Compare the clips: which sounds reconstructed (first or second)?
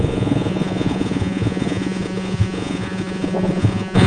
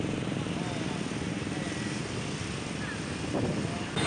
first